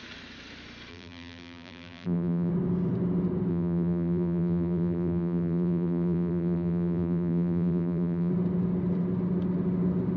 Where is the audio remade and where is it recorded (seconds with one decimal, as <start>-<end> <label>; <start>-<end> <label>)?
0.0-0.9 recorded; 0.9-2.5 remade; 2.5-3.5 recorded; 3.5-8.3 remade; 8.3-10.2 recorded